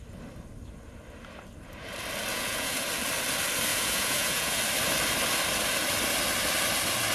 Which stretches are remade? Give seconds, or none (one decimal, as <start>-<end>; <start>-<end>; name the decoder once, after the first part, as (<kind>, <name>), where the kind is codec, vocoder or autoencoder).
2.3-2.9 (vocoder, Vocos); 3.7-4.6